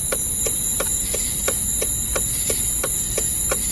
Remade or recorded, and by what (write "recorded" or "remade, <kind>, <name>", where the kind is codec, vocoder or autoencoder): recorded